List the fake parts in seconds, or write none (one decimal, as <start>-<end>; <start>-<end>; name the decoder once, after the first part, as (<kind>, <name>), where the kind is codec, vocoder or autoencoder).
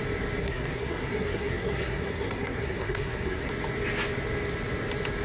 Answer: 0.4-3.5 (codec, SNAC)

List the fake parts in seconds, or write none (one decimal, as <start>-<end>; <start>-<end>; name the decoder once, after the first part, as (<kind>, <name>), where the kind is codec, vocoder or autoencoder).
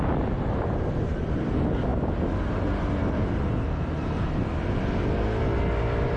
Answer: none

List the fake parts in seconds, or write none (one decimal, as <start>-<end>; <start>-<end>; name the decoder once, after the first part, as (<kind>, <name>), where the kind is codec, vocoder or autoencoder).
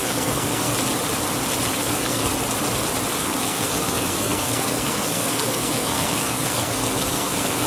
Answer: 0.0-0.7 (codec, SNAC); 1.8-2.3; 3.2-7.7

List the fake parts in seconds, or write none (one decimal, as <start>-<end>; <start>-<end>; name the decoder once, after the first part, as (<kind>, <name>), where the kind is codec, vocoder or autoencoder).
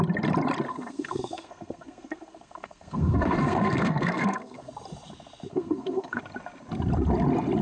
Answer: 0.7-4.7 (codec, SNAC); 5.5-6.2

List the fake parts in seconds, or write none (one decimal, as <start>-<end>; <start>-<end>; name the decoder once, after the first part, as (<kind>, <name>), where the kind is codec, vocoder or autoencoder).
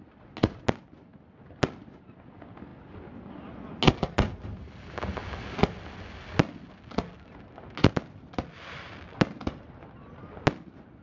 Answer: none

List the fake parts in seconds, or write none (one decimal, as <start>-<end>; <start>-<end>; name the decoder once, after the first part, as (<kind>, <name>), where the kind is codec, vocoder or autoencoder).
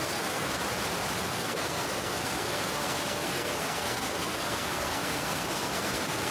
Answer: 0.0-0.6 (codec, SNAC); 1.2-6.3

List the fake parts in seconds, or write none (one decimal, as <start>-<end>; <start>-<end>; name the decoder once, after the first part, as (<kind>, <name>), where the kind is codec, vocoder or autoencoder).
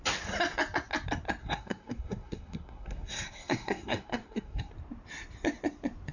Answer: 1.4-4.7 (codec, SNAC)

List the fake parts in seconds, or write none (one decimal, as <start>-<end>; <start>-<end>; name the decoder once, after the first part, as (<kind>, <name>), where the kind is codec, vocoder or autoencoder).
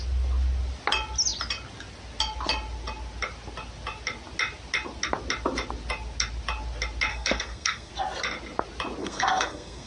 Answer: 7.1-7.9 (codec, SNAC); 9.0-9.9